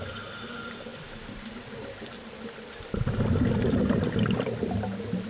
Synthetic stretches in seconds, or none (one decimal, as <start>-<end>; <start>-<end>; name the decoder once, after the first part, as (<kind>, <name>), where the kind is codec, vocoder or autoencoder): 0.0-0.9 (vocoder, BigVGAN v2); 3.9-5.3